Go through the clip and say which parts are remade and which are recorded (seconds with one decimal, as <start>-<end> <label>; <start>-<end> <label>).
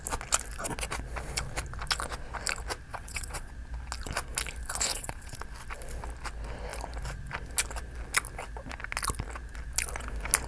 0.0-2.9 recorded; 2.9-3.5 remade; 3.5-4.9 recorded; 4.9-5.4 remade; 5.4-10.5 recorded